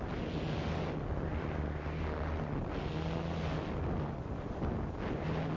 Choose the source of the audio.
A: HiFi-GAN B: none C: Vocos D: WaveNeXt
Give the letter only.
B